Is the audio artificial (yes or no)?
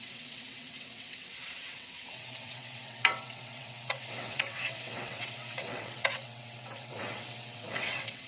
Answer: yes